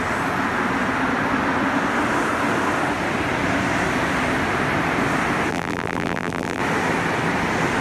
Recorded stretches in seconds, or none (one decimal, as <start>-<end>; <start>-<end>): 0.0-5.5; 6.6-7.8